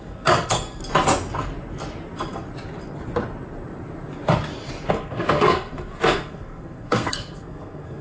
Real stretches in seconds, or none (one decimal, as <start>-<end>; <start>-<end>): 0.8-4.9